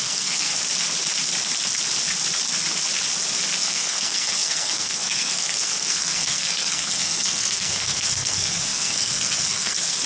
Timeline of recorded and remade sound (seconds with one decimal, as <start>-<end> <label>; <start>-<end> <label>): 0.0-0.5 remade; 0.5-3.6 recorded; 3.6-10.1 remade